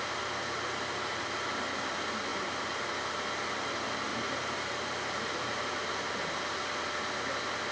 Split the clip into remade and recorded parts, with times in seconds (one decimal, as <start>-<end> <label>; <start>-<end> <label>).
0.0-2.3 recorded; 2.3-3.0 remade; 3.0-4.1 recorded; 4.1-5.7 remade; 5.7-7.7 recorded